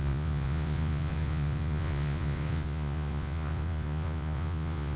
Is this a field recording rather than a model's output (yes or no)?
no